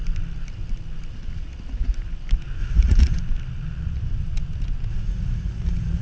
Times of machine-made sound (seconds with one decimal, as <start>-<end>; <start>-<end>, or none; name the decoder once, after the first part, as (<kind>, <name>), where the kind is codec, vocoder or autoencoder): 2.6-3.2 (vocoder, Vocos); 4.9-6.0